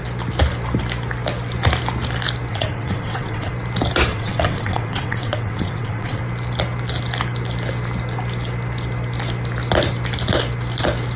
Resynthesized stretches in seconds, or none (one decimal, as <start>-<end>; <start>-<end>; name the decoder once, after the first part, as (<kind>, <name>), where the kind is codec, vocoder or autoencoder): 2.5-3.5 (vocoder, WaveNeXt); 4.1-6.2